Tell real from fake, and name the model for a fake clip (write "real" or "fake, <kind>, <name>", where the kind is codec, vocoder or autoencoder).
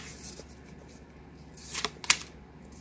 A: real